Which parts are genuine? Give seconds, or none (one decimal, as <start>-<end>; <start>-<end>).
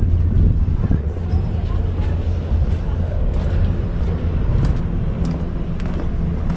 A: 0.0-0.7; 1.2-6.6